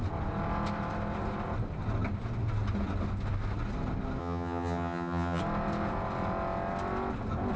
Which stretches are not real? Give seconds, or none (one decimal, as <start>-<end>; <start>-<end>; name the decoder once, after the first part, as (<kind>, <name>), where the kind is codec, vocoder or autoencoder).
4.2-5.4 (vocoder, HiFi-GAN)